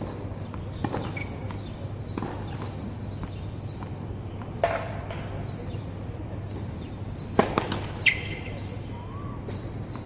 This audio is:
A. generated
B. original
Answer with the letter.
B